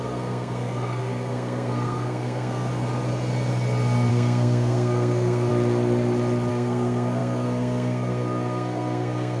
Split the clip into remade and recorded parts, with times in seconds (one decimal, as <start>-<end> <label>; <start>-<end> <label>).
0.0-2.7 remade; 2.7-4.1 recorded; 4.1-5.5 remade; 5.5-6.5 recorded; 6.5-9.4 remade